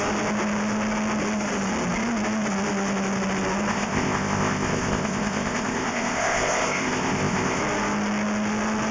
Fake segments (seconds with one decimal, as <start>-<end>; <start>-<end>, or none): 3.7-7.6